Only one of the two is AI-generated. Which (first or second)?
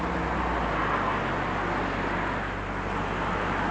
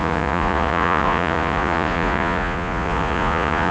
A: second